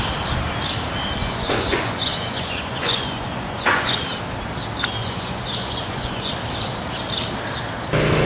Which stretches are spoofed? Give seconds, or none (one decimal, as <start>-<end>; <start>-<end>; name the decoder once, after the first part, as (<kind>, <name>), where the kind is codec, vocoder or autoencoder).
1.2-4.0 (vocoder, Vocos); 5.0-6.3